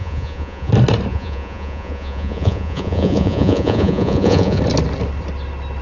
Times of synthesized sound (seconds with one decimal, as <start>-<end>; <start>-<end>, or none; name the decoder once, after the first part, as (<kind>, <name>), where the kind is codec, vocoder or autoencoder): 0.0-0.7 (vocoder, Vocos); 1.1-4.6